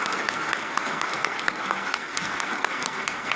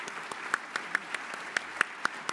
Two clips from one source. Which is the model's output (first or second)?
first